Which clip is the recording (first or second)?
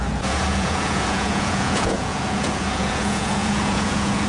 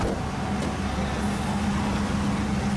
second